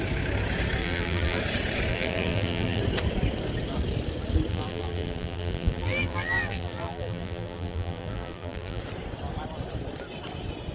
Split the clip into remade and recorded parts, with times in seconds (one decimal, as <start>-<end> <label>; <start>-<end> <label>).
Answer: 0.0-0.8 recorded; 0.8-1.4 remade; 1.4-1.9 recorded; 1.9-2.8 remade; 2.8-4.5 recorded; 4.5-8.8 remade; 8.8-10.7 recorded